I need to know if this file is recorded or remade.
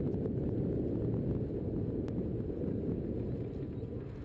recorded